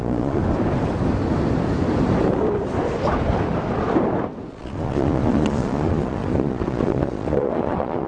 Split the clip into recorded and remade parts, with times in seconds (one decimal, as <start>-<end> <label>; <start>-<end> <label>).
0.0-0.4 remade; 0.4-4.5 recorded; 4.5-8.1 remade